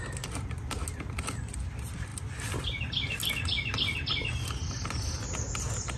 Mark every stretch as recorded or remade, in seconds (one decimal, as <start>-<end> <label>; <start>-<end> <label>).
0.0-6.0 recorded